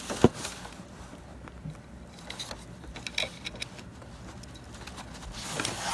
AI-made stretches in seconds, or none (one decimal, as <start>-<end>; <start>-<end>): none